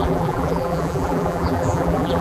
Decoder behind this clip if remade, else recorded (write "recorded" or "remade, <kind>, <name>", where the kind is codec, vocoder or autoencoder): remade, vocoder, BigVGAN v2